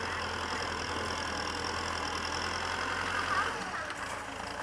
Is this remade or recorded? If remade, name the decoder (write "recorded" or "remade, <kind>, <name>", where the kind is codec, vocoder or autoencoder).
recorded